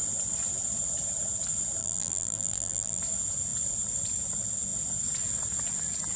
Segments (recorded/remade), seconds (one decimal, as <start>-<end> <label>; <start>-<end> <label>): 0.0-1.8 recorded; 1.8-3.0 remade; 3.0-6.2 recorded